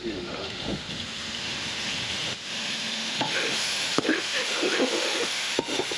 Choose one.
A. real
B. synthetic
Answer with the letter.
B